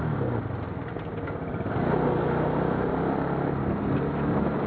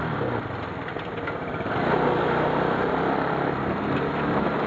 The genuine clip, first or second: first